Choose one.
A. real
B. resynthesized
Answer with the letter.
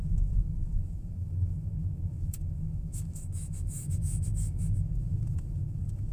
B